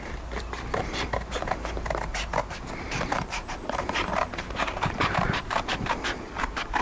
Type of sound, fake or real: fake